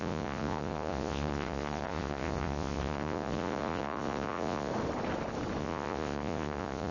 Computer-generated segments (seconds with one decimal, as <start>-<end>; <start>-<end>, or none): 0.0-4.7; 5.6-6.9